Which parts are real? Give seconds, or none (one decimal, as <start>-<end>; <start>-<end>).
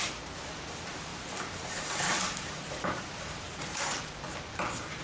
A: none